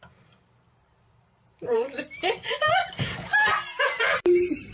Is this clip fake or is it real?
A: fake